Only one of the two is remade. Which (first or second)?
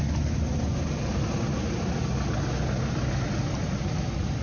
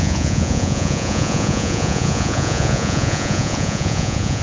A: second